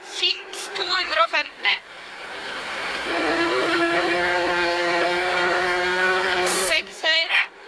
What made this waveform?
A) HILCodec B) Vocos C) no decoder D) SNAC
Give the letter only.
D